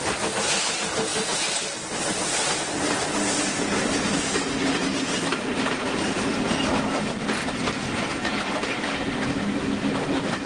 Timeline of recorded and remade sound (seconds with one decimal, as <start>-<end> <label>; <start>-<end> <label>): 0.0-10.5 recorded